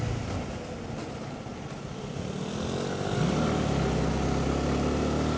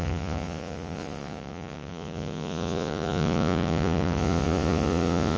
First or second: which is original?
first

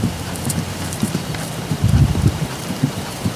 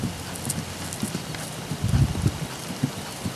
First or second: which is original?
second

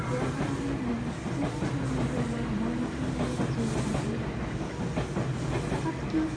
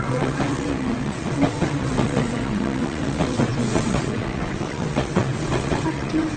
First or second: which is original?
first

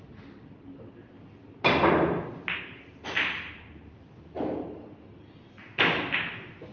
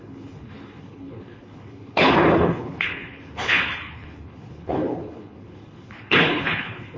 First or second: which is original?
first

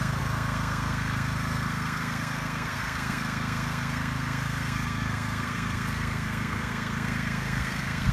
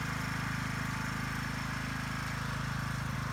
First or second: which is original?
second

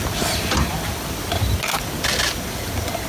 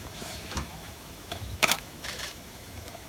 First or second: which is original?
first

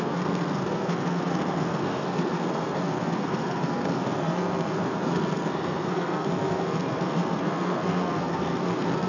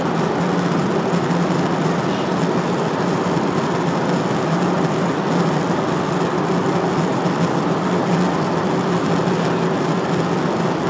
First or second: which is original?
second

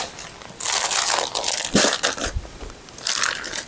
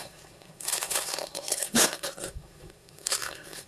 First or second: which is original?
first